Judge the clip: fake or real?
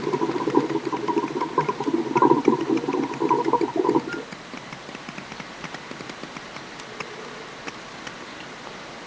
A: real